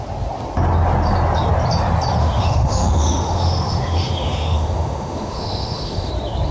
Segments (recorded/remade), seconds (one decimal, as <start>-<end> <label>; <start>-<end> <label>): 0.0-2.2 recorded; 2.2-6.1 remade; 6.1-6.5 recorded